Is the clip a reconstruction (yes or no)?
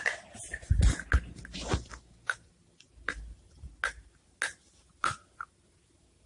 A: no